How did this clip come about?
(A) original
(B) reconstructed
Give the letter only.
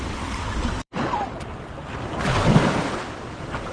B